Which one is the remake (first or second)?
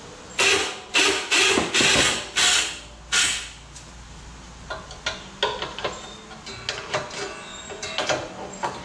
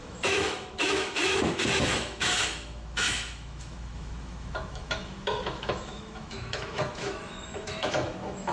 second